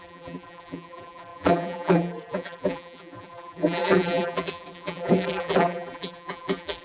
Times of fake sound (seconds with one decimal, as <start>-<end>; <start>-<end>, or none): 0.0-6.8